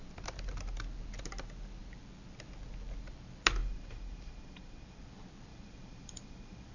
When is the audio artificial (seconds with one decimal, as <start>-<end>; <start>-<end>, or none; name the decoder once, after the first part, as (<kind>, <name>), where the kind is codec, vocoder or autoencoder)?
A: 3.6-5.0 (vocoder, BigVGAN v2); 5.5-6.7